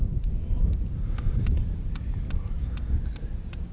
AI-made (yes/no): no